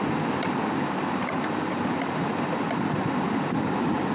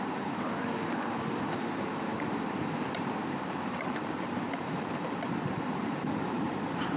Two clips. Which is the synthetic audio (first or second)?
second